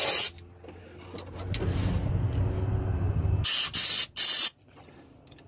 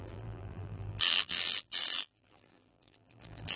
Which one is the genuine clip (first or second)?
first